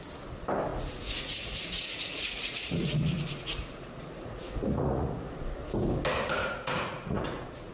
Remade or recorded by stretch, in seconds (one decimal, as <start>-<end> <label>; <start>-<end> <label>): 0.0-0.7 recorded; 0.7-5.3 remade; 5.3-6.4 recorded; 6.4-7.7 remade